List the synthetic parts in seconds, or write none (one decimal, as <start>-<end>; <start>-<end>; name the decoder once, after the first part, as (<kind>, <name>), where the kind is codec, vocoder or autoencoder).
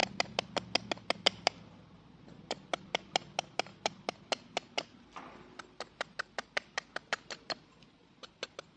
none